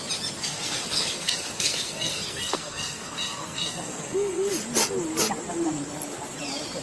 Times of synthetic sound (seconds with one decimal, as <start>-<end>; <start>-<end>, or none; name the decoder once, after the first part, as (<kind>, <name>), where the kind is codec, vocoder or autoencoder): 0.4-4.5 (codec, SNAC)